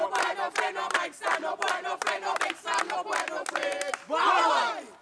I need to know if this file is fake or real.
real